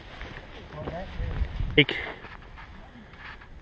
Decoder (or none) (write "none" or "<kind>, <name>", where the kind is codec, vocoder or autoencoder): none